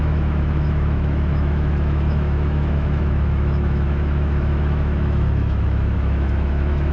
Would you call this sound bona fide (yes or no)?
no